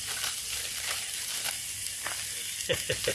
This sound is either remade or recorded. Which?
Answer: recorded